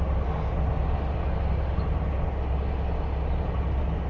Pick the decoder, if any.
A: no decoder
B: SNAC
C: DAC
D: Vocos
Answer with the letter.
A